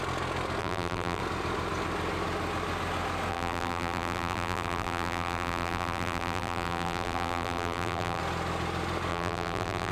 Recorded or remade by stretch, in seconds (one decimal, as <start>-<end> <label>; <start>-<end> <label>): 0.0-0.6 recorded; 0.6-1.2 remade; 1.2-3.3 recorded; 3.3-8.2 remade; 8.2-9.1 recorded; 9.1-9.9 remade

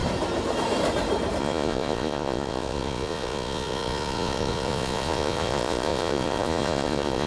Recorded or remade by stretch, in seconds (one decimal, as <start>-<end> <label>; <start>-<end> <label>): 0.0-1.4 recorded; 1.4-7.3 remade

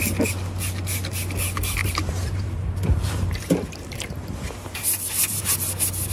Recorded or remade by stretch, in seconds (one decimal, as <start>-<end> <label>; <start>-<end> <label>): 0.0-1.8 recorded; 1.8-5.5 remade; 5.5-6.1 recorded

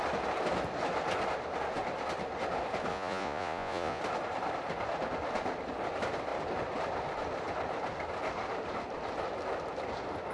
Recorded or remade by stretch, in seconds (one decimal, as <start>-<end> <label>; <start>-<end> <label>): 0.0-2.9 recorded; 2.9-4.0 remade; 4.0-10.3 recorded

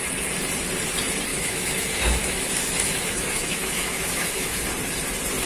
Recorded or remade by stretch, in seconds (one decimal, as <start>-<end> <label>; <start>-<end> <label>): 0.0-1.3 recorded; 1.3-4.6 remade; 4.6-5.5 recorded